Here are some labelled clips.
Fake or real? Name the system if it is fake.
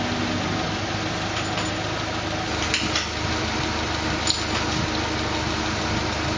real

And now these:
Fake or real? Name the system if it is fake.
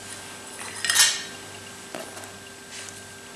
real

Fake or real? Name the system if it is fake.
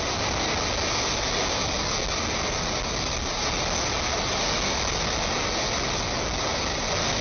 real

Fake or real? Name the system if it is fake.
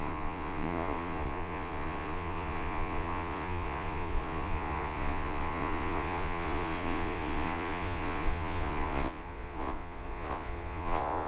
fake, vocoder, Vocos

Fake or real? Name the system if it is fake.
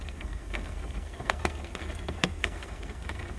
fake, codec, SNAC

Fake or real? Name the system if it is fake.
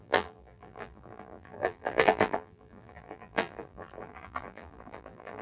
fake, vocoder, BigVGAN v2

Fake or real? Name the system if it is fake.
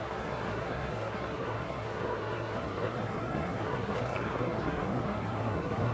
fake, codec, SNAC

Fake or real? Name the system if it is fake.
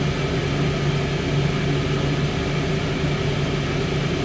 real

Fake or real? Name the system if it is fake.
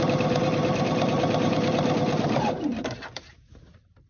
fake, vocoder, BigVGAN v2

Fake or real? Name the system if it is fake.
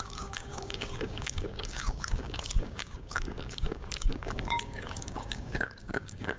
fake, codec, DAC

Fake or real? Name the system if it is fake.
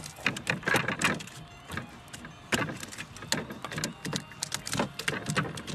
real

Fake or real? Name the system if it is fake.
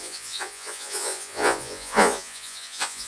fake, vocoder, Vocos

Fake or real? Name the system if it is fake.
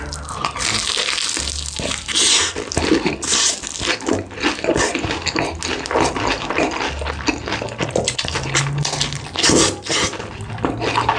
real